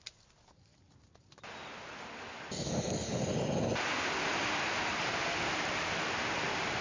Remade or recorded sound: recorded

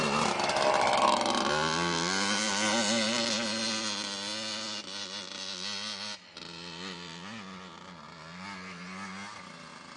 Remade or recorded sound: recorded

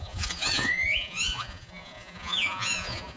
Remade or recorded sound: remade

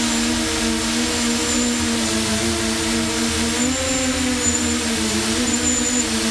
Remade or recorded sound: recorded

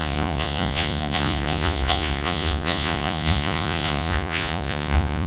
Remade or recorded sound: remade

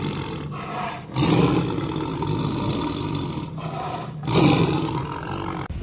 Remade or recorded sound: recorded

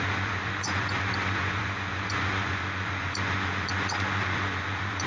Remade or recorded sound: remade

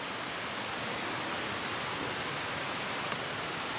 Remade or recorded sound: recorded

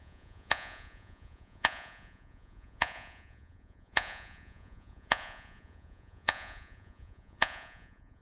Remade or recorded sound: remade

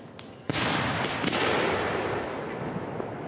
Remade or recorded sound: recorded